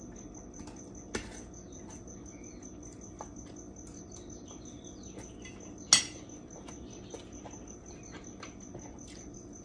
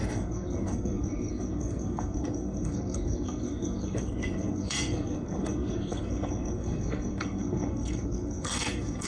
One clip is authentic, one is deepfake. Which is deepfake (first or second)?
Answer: second